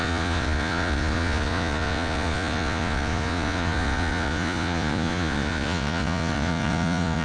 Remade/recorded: remade